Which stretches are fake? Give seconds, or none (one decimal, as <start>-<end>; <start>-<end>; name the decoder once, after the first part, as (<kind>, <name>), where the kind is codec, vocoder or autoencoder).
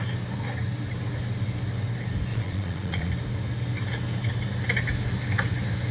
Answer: 2.3-3.1 (vocoder, Vocos)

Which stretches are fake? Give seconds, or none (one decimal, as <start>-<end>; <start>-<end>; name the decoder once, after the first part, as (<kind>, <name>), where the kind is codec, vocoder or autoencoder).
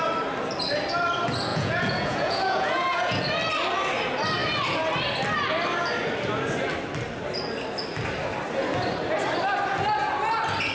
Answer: 1.5-3.1 (vocoder, Vocos)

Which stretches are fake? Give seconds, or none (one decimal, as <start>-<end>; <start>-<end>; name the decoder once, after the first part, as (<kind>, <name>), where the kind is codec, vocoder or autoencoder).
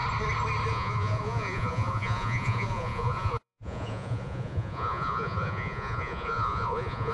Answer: 0.7-7.1 (vocoder, Vocos)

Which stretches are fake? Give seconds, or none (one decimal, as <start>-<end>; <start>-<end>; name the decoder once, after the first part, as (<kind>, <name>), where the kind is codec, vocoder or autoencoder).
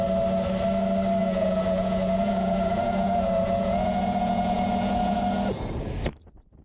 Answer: 1.2-5.2 (vocoder, Vocos)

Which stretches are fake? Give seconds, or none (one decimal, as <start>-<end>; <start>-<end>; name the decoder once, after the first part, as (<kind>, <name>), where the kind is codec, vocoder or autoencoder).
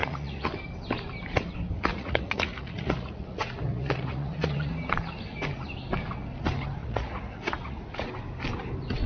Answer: 0.0-0.5 (vocoder, Vocos); 1.9-4.7; 6.8-8.1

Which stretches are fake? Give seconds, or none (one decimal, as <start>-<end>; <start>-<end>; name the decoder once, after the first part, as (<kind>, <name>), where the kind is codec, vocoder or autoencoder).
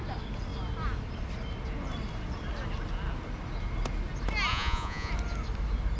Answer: 4.5-5.1 (vocoder, Vocos)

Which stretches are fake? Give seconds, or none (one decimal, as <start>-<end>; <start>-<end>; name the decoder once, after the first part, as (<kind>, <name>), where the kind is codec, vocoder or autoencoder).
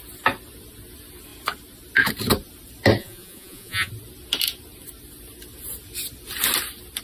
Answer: 3.0-3.9 (vocoder, Vocos)